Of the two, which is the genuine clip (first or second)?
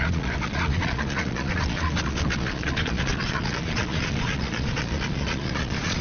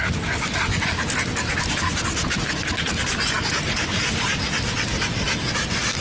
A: second